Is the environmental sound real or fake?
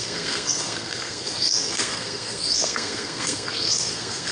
fake